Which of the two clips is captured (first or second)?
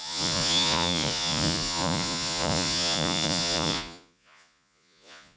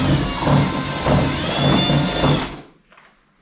second